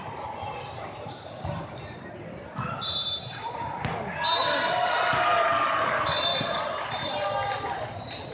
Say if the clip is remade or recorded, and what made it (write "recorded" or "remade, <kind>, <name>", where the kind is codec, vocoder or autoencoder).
recorded